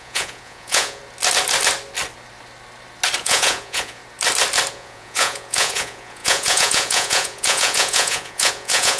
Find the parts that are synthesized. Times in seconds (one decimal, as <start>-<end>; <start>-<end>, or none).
0.0-1.0; 3.2-4.0; 4.7-9.0